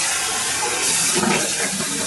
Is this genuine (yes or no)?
yes